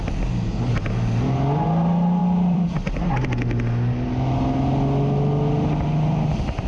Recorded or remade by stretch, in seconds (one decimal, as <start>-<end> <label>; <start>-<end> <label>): 0.0-2.2 recorded; 2.2-3.1 remade; 3.1-6.7 recorded